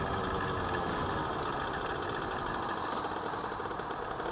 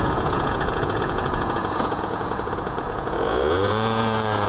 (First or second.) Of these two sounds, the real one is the first